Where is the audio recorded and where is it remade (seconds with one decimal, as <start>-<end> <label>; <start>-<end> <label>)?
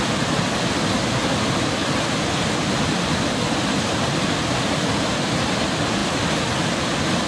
0.0-7.3 recorded